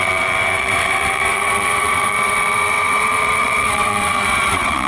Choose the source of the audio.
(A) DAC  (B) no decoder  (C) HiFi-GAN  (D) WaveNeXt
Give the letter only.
D